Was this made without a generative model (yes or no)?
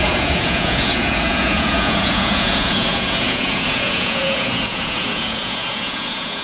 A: no